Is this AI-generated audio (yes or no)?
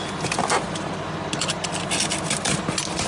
no